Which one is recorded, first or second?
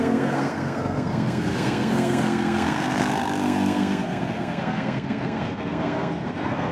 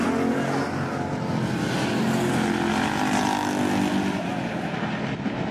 second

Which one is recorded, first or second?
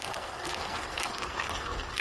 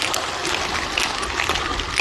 second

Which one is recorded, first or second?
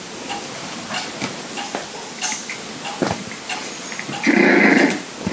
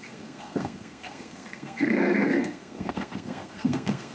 first